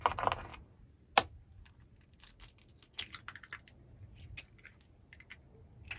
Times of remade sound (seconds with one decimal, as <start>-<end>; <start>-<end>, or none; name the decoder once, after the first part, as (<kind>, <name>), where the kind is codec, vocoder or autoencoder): none